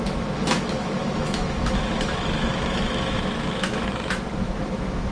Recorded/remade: remade